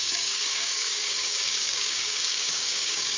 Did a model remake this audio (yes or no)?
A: yes